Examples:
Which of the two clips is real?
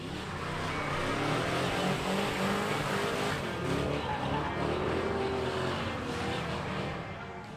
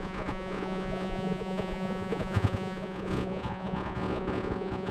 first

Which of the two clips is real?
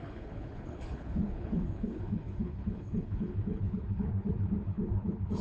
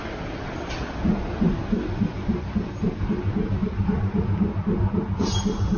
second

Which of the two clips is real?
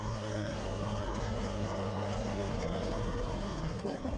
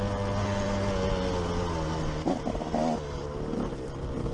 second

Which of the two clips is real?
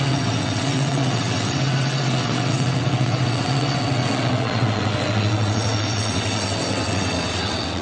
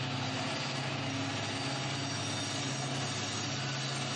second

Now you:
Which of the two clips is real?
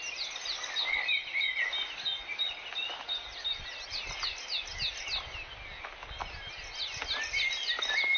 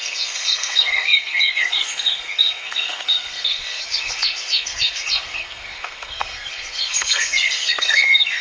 first